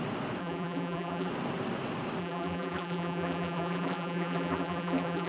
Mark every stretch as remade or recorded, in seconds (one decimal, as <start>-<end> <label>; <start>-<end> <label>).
0.0-0.4 recorded; 0.4-1.3 remade; 1.3-2.2 recorded; 2.2-5.3 remade